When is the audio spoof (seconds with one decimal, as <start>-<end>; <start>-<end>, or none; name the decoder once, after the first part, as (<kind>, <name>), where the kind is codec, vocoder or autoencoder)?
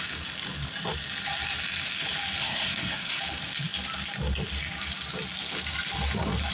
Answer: 2.4-3.2 (codec, SNAC)